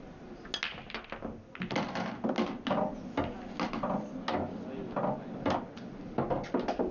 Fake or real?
real